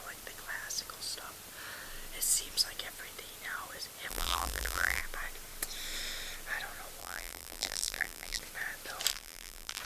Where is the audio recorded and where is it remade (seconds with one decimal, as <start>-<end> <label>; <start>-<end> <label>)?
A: 0.0-4.1 recorded; 4.1-5.0 remade; 5.0-7.0 recorded; 7.0-8.4 remade; 8.4-9.1 recorded; 9.1-9.8 remade

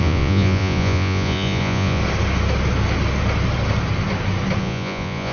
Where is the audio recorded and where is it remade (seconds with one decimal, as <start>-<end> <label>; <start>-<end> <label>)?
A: 0.0-2.0 remade; 2.0-4.6 recorded; 4.6-5.3 remade

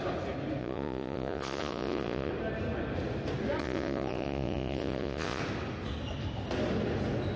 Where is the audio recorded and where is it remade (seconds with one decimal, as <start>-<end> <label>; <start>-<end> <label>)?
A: 0.0-0.6 recorded; 0.6-2.3 remade; 2.3-3.6 recorded; 3.6-5.4 remade; 5.4-7.4 recorded

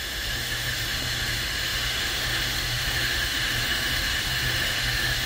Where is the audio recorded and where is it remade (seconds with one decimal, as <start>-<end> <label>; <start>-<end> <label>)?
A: 0.0-5.3 remade

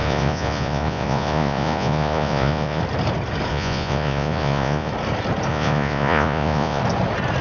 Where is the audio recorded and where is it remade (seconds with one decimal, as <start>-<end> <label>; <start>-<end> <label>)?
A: 0.0-2.8 remade; 2.8-3.5 recorded; 3.5-4.9 remade; 4.9-5.5 recorded; 5.5-6.8 remade; 6.8-7.4 recorded

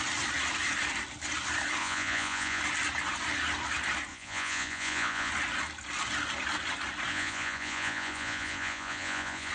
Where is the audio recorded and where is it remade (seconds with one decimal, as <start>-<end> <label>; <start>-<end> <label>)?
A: 0.0-1.8 recorded; 1.8-2.6 remade; 2.6-4.1 recorded; 4.1-5.3 remade; 5.3-7.1 recorded; 7.1-9.5 remade

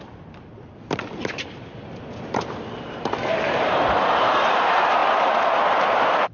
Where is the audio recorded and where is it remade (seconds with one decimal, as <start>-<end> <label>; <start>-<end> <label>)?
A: 0.0-6.3 recorded

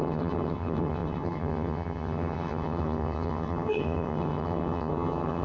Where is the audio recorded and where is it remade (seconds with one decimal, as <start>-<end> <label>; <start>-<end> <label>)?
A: 0.0-5.4 remade